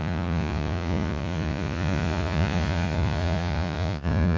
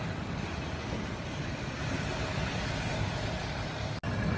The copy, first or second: first